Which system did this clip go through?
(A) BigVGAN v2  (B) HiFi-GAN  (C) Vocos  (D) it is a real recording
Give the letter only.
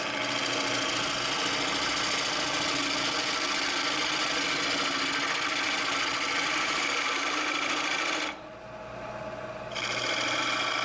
D